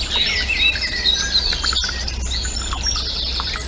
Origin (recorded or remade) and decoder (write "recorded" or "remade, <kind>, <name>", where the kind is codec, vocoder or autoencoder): recorded